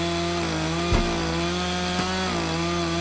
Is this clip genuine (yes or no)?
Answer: yes